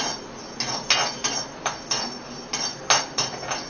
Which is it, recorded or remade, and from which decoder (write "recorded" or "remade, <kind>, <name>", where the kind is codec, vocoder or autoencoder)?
recorded